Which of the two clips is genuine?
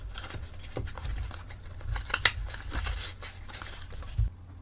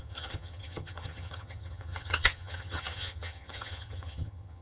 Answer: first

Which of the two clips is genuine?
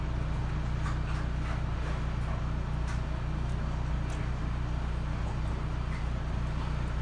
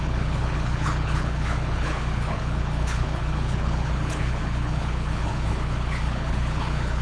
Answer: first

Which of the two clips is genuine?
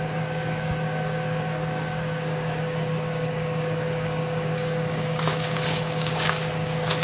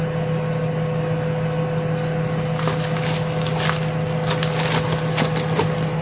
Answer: second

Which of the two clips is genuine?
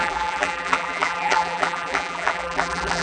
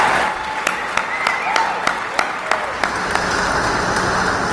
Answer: second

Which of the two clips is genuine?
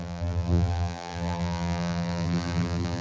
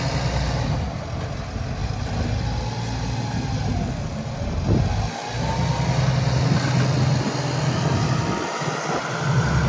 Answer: second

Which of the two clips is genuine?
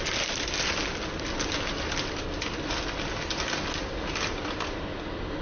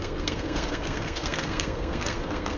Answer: first